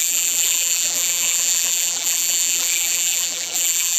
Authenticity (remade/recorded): remade